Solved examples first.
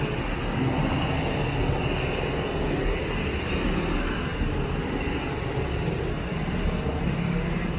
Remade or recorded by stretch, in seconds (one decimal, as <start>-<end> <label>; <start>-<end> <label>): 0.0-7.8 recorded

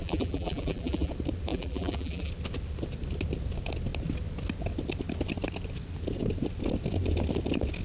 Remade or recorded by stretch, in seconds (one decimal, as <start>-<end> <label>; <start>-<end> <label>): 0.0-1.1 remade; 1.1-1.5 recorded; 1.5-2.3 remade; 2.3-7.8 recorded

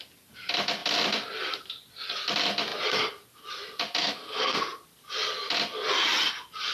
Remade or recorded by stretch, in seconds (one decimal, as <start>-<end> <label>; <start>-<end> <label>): 0.0-4.0 recorded; 4.0-4.6 remade; 4.6-6.7 recorded